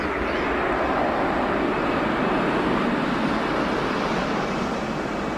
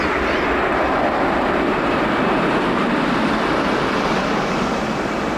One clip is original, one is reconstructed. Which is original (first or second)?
first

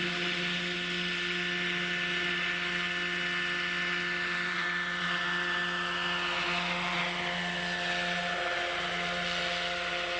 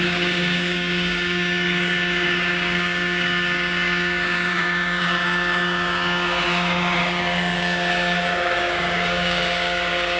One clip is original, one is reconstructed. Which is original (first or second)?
first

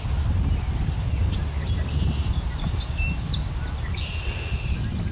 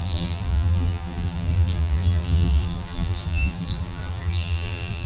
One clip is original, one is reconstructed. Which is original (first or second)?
first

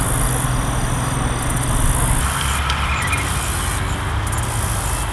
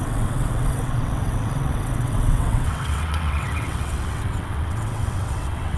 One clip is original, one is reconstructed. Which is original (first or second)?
first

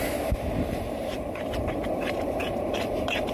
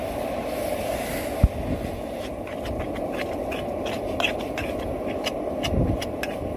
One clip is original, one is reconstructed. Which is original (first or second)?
second